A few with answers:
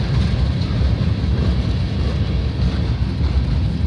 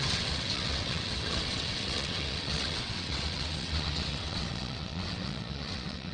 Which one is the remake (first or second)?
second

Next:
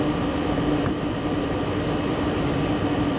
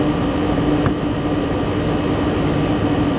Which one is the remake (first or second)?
first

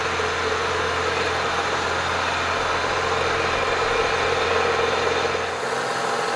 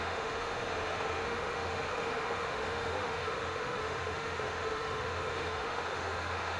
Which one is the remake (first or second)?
second